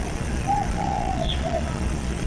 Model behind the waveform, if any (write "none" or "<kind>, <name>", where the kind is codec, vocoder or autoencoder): vocoder, Vocos